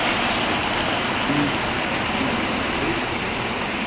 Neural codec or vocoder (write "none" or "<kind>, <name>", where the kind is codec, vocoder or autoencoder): none